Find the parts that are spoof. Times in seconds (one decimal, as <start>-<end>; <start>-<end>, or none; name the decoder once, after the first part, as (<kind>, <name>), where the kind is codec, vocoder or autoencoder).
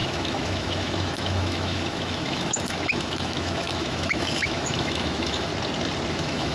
0.0-5.5 (autoencoder, DAC-VAE); 6.1-6.5